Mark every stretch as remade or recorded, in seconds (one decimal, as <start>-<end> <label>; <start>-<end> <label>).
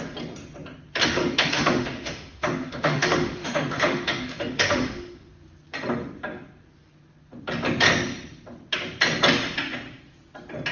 0.0-1.0 recorded; 1.0-5.3 remade; 5.3-10.7 recorded